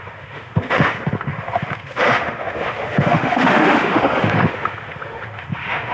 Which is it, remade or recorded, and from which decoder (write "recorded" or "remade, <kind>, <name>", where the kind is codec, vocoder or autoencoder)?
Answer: remade, autoencoder, DAC-VAE